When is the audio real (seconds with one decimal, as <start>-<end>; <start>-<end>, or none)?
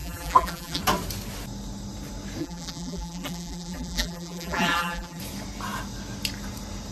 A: 0.8-2.4; 5.2-6.9